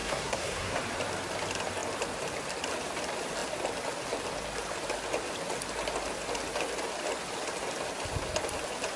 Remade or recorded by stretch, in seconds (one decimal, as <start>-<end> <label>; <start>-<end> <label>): 0.0-0.8 remade; 0.8-9.0 recorded